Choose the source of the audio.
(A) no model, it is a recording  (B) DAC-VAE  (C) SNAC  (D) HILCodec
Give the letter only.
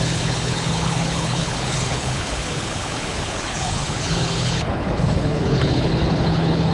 D